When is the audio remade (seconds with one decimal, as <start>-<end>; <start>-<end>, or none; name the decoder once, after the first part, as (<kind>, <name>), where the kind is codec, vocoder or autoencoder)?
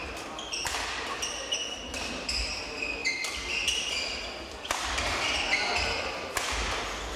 none